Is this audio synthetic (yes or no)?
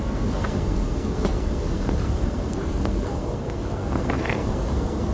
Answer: yes